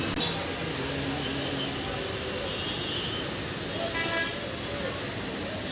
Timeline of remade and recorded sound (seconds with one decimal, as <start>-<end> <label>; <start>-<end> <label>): 0.0-5.7 recorded